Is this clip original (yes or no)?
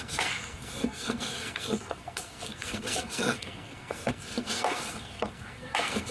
no